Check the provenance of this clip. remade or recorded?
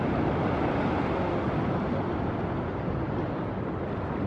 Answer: recorded